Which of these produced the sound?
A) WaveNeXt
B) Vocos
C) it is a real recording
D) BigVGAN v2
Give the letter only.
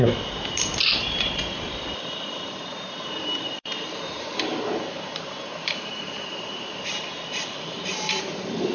D